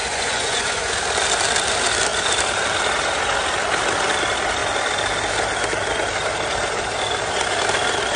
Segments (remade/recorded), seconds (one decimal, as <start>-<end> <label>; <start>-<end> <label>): 0.0-0.9 remade; 0.9-8.2 recorded